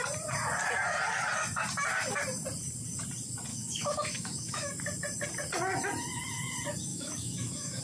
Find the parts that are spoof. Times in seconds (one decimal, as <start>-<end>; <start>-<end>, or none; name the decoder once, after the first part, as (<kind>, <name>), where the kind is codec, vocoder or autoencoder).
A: 3.5-4.7 (autoencoder, DAC-VAE); 6.9-7.8